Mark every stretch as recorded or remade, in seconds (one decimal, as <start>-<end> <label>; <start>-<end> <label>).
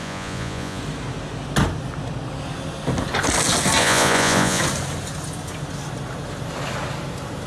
0.0-0.8 remade; 0.8-3.8 recorded; 3.8-4.6 remade; 4.6-7.5 recorded